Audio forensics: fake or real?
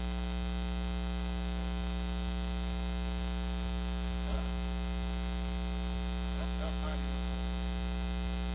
fake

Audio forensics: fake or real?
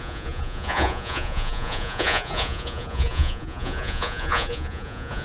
fake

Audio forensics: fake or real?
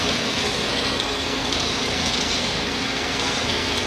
fake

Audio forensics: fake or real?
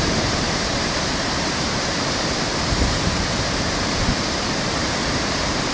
fake